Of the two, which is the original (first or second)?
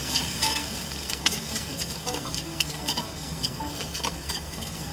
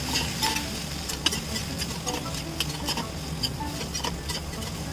second